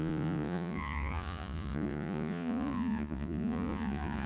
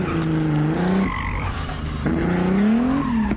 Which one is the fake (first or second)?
first